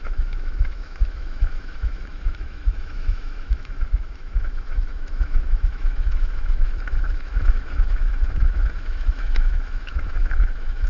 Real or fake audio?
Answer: fake